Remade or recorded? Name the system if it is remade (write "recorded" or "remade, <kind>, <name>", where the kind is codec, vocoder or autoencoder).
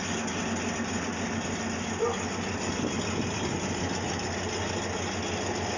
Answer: recorded